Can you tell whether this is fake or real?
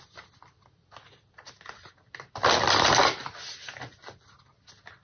real